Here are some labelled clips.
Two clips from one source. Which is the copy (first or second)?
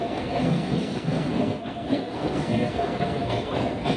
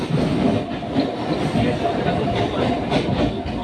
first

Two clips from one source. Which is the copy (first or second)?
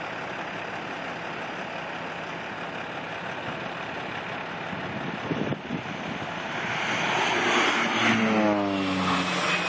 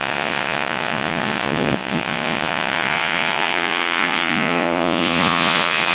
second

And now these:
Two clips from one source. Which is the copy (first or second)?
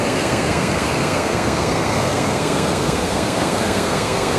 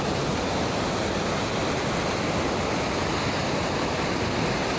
first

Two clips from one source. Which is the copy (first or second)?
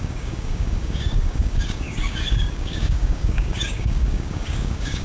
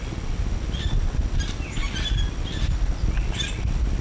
first